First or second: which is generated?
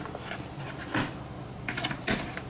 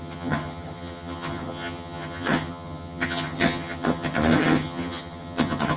second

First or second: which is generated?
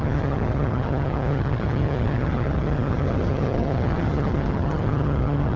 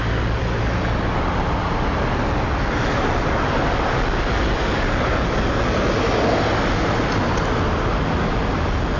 first